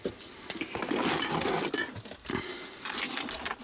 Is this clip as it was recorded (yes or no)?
yes